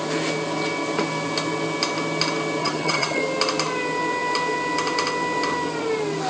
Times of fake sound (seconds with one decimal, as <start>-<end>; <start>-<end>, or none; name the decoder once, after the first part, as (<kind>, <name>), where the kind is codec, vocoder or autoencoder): 2.6-3.2 (vocoder, HiFi-GAN)